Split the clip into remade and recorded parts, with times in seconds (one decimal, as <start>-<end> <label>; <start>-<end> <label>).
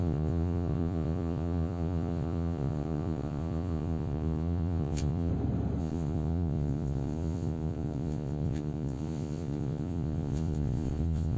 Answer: 0.0-5.3 remade; 5.3-5.8 recorded; 5.8-11.4 remade